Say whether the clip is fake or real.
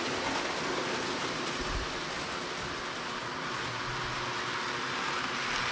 real